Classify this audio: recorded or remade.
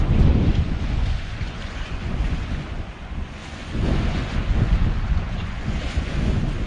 remade